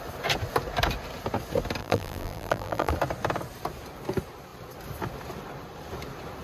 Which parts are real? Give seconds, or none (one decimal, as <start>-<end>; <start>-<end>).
0.0-1.8; 2.9-6.4